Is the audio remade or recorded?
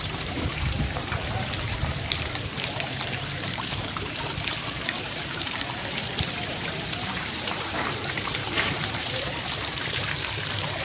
remade